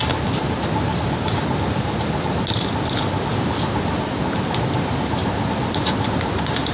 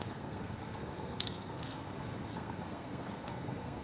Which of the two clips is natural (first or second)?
first